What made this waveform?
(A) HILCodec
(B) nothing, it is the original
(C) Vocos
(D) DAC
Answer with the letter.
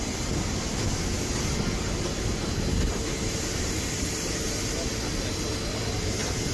B